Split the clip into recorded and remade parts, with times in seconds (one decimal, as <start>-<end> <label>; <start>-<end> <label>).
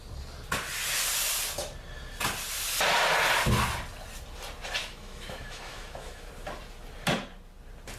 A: 0.0-4.8 recorded; 4.8-6.3 remade; 6.3-8.0 recorded